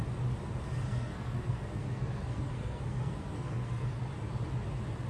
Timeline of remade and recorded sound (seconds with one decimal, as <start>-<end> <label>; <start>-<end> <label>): 0.0-0.9 recorded; 0.9-4.0 remade; 4.0-5.1 recorded